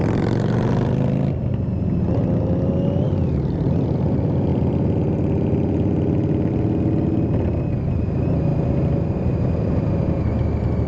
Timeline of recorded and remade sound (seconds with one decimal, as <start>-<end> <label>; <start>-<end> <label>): 0.0-10.9 recorded